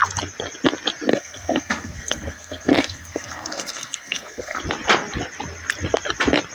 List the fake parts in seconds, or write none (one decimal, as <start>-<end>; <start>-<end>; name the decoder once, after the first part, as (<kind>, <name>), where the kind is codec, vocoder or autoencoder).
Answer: 1.1-4.6 (codec, SNAC)